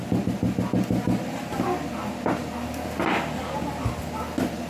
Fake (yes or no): no